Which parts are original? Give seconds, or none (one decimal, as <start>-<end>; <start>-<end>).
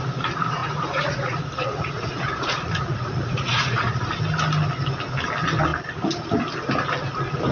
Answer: 0.0-0.6; 4.1-7.5